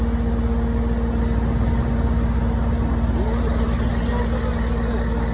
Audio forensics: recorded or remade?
recorded